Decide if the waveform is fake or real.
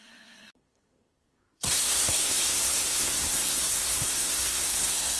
fake